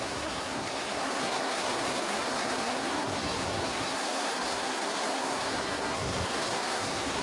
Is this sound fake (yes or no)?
yes